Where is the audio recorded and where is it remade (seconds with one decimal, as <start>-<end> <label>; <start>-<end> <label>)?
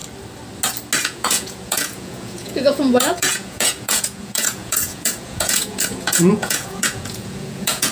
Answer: 0.0-1.0 recorded; 1.0-7.9 remade